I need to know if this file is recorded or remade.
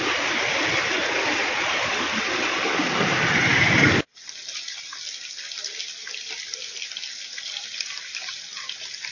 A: recorded